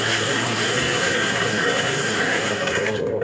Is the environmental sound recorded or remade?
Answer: remade